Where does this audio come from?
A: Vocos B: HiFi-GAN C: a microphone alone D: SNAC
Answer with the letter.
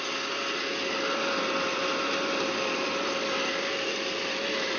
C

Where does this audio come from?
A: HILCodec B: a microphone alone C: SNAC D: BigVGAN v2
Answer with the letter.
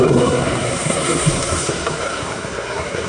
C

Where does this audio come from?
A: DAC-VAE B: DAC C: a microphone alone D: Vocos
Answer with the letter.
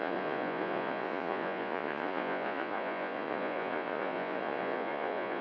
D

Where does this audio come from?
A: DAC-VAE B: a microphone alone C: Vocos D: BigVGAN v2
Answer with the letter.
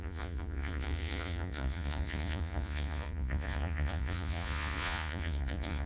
C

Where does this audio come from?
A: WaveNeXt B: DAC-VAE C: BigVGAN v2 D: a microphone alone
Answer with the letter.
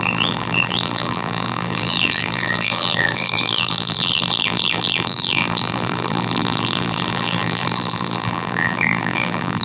C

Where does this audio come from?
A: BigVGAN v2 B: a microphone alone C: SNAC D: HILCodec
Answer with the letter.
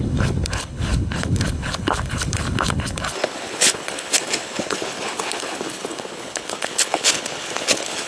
D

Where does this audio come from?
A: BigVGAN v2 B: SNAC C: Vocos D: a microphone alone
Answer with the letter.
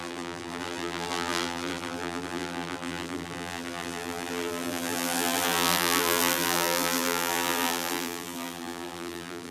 A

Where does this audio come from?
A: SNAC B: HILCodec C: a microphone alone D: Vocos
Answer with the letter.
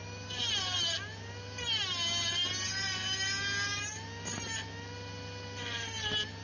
C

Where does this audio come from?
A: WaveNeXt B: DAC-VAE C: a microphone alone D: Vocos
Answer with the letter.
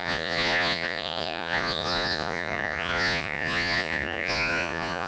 D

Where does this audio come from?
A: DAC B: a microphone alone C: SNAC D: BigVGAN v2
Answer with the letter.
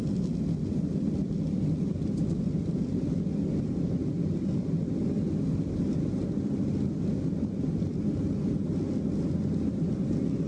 B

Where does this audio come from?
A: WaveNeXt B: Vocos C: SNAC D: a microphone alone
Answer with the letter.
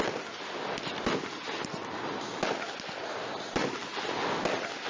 D